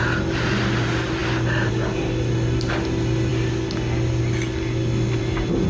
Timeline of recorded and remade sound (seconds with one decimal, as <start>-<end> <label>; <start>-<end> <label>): 0.0-5.7 recorded